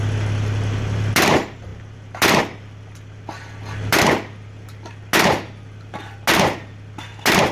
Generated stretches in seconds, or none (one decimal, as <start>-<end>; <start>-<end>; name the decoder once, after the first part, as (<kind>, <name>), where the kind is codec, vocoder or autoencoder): none